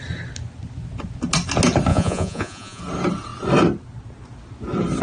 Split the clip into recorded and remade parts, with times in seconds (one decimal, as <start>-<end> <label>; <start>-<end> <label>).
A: 0.0-1.9 recorded; 1.9-2.8 remade; 2.8-5.0 recorded